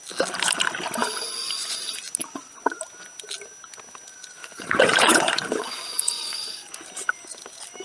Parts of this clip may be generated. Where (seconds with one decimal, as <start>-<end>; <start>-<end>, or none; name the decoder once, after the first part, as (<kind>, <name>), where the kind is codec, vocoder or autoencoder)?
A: 1.0-1.8 (vocoder, Vocos); 2.2-2.8; 4.4-6.7